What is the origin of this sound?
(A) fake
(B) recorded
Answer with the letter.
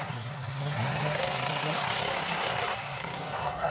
A